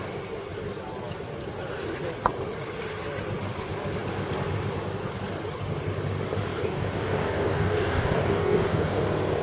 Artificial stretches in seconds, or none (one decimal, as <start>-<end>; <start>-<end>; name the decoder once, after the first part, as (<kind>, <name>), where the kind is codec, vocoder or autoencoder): 6.5-9.0 (codec, DAC)